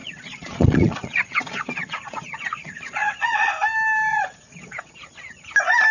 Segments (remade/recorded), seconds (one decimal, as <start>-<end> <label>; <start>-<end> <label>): 0.0-3.5 remade; 3.5-4.1 recorded; 4.1-4.9 remade; 4.9-5.9 recorded